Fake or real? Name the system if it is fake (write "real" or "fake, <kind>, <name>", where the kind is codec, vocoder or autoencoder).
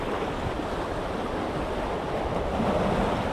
real